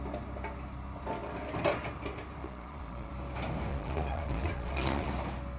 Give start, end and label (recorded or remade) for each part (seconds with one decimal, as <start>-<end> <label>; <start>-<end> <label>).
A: 0.0-2.4 recorded; 2.4-3.1 remade; 3.1-3.7 recorded; 3.7-5.1 remade; 5.1-5.6 recorded